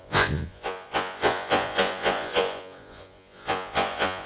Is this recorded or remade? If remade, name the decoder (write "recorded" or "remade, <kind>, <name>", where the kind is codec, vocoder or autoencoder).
remade, vocoder, Vocos